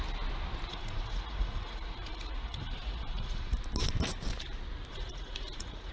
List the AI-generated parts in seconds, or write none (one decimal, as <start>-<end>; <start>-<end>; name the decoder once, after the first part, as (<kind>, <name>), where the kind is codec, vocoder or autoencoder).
0.7-3.6 (vocoder, Vocos); 4.9-5.9